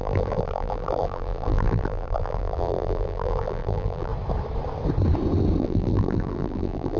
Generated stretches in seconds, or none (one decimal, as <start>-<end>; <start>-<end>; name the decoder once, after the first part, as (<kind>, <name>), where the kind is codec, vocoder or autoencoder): 0.0-4.1 (vocoder, BigVGAN v2); 5.6-7.0